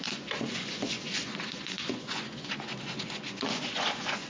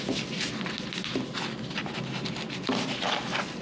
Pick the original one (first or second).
second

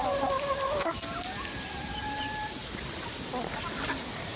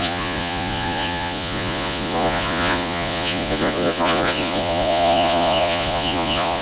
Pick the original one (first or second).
first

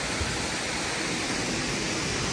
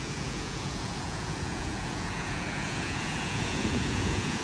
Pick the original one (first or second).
first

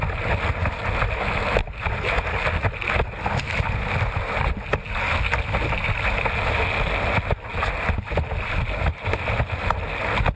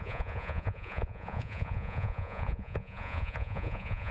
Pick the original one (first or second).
first